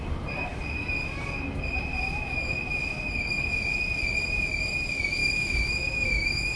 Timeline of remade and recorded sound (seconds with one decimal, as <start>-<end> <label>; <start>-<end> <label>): 0.0-5.2 recorded; 5.2-6.6 remade